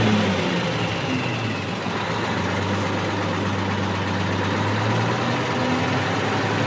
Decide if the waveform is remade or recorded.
recorded